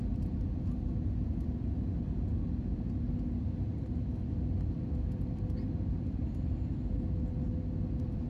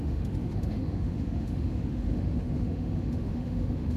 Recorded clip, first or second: first